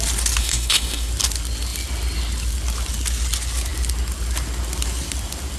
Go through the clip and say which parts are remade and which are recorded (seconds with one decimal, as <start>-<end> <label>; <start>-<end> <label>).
0.0-0.4 recorded; 0.4-1.1 remade; 1.1-5.6 recorded